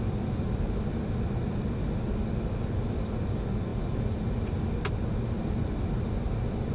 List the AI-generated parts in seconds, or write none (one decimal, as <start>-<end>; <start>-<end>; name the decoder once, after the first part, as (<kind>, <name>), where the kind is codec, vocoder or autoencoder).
none